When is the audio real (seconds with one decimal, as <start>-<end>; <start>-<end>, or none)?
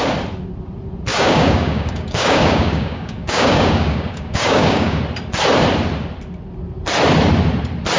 0.0-1.1; 5.0-8.0